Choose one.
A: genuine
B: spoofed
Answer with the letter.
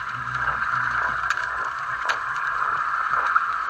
B